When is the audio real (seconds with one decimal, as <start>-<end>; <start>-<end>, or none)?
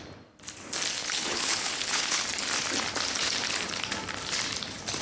0.0-1.0; 2.2-5.0